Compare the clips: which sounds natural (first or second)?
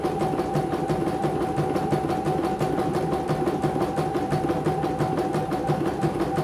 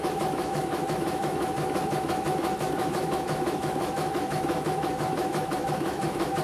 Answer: first